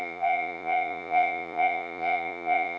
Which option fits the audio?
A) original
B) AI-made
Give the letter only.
B